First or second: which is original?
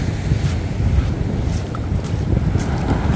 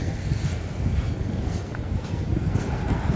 first